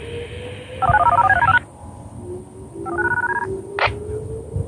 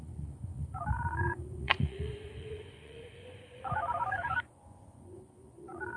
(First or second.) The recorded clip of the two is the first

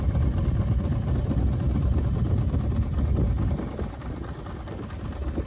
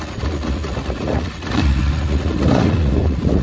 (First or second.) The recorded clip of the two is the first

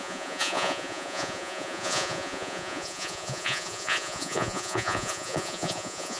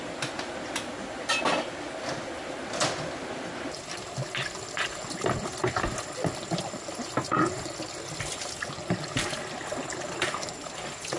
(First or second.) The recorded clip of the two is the second